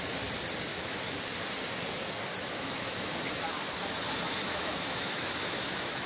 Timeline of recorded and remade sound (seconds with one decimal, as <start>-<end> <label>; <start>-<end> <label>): 0.0-0.7 recorded; 0.7-1.2 remade; 1.2-2.4 recorded; 2.4-3.1 remade; 3.1-4.5 recorded; 4.5-6.1 remade

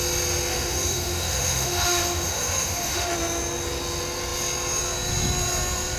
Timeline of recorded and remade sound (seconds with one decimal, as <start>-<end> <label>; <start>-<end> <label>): 0.0-0.5 recorded; 0.5-3.1 remade; 3.1-6.0 recorded

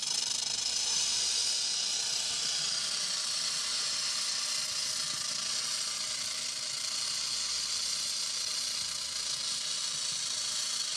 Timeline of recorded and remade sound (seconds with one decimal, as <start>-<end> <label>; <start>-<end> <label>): 0.0-11.0 recorded

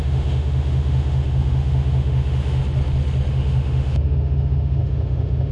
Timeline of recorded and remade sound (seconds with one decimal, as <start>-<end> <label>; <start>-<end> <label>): 0.0-2.6 remade; 2.6-3.3 recorded; 3.3-5.5 remade

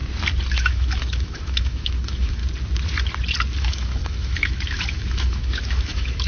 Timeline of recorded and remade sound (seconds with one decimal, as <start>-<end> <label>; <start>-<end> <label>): 0.0-0.5 recorded; 0.5-2.4 remade; 2.4-3.6 recorded; 3.6-6.3 remade

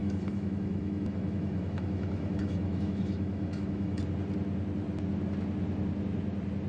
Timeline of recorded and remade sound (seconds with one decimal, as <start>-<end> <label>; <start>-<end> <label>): 0.0-4.0 remade; 4.0-6.7 recorded

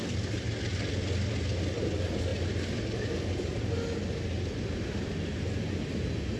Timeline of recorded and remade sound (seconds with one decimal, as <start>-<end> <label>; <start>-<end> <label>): 0.0-6.4 recorded